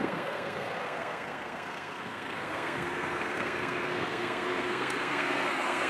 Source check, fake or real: fake